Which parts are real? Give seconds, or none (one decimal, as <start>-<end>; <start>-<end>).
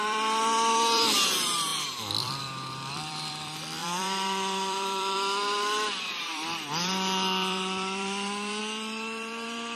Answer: none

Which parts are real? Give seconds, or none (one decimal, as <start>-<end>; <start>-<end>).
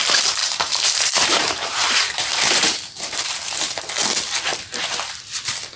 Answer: 0.0-0.4; 3.9-5.8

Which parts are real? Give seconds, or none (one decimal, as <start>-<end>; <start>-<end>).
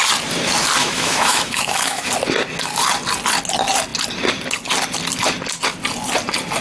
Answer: 0.0-0.8; 2.1-6.6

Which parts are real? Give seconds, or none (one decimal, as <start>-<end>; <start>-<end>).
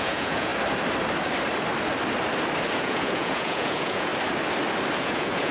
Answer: 0.5-2.8; 4.1-5.0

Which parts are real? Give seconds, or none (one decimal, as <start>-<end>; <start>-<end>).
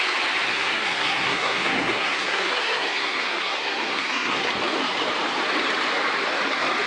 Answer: 0.0-0.5; 4.5-6.9